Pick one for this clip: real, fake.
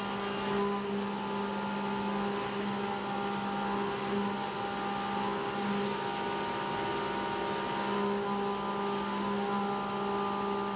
real